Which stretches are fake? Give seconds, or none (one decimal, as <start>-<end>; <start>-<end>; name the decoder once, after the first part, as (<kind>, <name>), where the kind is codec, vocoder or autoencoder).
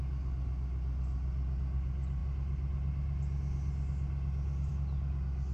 none